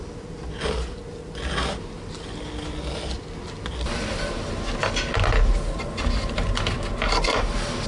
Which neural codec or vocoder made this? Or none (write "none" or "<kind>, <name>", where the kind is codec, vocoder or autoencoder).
none